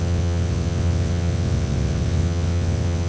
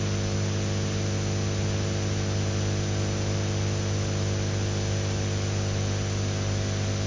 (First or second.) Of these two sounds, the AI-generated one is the first